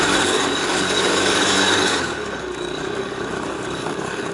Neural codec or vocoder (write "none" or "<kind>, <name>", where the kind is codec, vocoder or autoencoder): codec, DAC